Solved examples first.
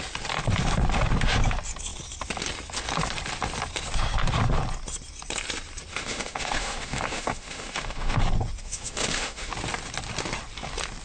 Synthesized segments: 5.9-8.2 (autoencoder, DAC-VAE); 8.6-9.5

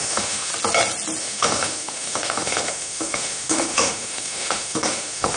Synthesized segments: 0.0-0.5 (autoencoder, DAC-VAE); 1.2-5.4

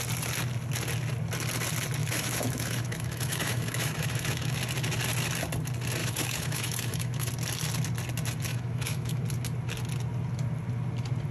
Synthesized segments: 2.0-4.6 (autoencoder, DAC-VAE); 6.0-7.3; 8.5-9.2

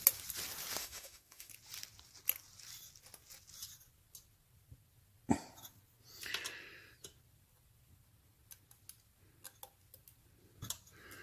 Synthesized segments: 0.8-1.5 (autoencoder, DAC-VAE)

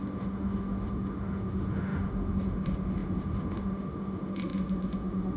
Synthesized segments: 0.0-5.4 (autoencoder, DAC-VAE)